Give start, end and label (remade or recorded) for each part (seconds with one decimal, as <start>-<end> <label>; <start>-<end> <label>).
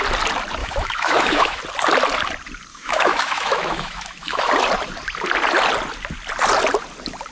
0.0-0.6 recorded; 0.6-1.6 remade; 1.6-2.7 recorded; 2.7-4.5 remade; 4.5-7.3 recorded